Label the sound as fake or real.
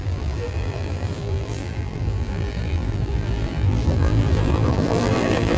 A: fake